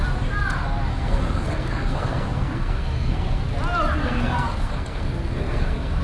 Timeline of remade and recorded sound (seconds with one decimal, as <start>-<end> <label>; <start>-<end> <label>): 0.0-0.9 recorded; 0.9-3.4 remade; 3.4-4.0 recorded; 4.0-6.0 remade

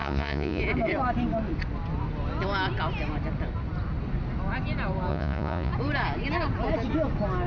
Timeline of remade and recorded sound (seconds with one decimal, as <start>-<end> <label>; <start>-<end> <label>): 0.0-0.6 remade; 0.6-5.1 recorded; 5.1-5.7 remade; 5.7-7.5 recorded

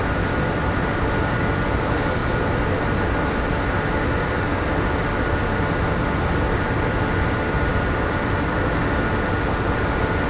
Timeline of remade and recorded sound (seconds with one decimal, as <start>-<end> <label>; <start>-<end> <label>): 0.0-10.3 recorded

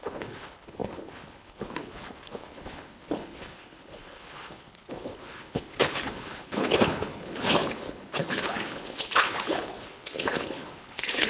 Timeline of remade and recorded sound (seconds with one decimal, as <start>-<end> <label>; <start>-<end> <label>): 0.0-11.3 remade

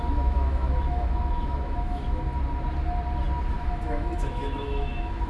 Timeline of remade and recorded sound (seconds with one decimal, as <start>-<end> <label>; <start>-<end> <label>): 0.0-2.3 remade; 2.3-3.5 recorded; 3.5-5.3 remade

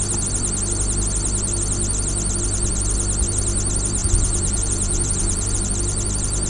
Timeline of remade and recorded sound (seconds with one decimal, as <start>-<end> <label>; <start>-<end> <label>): 0.0-4.0 recorded; 4.0-5.6 remade; 5.6-6.5 recorded